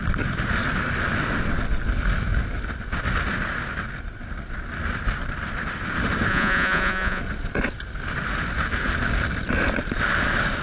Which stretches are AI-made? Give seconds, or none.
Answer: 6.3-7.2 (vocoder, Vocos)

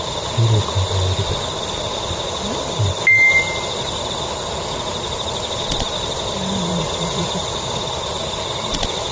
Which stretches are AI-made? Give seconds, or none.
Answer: 6.7-7.3 (vocoder, Vocos)

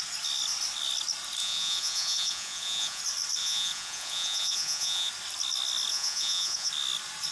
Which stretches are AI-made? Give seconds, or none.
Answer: 1.4-3.0 (vocoder, Vocos); 3.4-5.1; 5.9-6.7

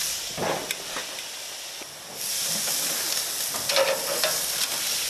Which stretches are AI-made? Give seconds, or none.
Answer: none

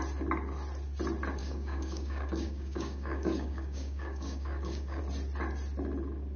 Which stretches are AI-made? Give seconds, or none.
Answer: 1.4-5.0 (codec, DAC)